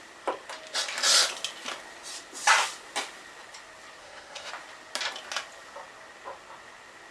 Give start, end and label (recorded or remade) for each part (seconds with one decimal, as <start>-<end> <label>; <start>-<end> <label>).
0.0-4.0 recorded; 4.0-4.5 remade; 4.5-7.1 recorded